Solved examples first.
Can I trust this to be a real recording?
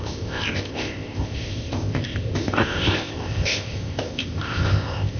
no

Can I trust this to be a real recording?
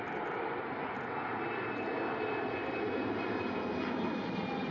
yes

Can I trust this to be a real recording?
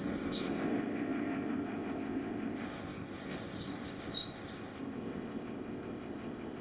no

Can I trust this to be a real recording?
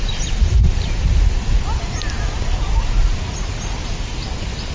yes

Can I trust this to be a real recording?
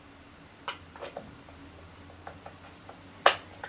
yes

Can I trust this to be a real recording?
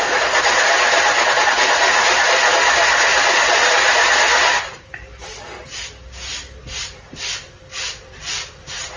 yes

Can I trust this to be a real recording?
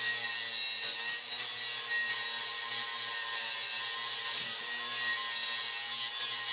yes